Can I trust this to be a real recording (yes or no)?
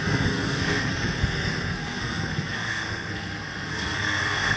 no